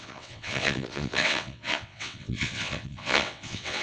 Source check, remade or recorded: remade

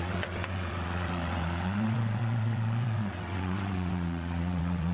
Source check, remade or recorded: remade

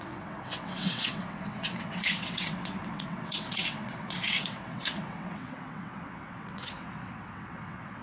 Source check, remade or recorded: remade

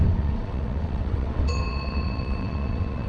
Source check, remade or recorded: remade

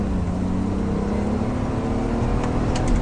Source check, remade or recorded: recorded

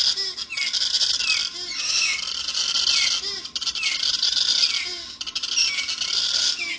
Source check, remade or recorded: recorded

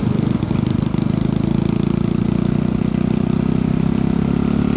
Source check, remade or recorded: recorded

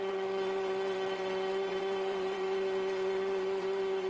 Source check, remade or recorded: remade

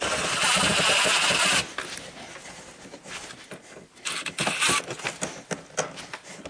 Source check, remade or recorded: recorded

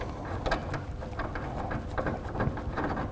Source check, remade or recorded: recorded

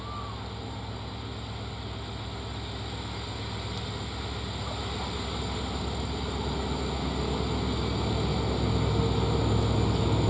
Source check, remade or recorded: recorded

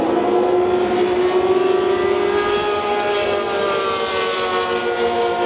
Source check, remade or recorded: recorded